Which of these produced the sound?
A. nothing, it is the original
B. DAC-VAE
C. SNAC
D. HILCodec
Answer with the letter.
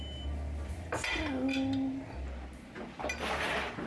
A